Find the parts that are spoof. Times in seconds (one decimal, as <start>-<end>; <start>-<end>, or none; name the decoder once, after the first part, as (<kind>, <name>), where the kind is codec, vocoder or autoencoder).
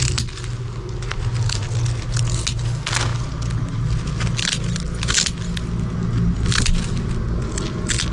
none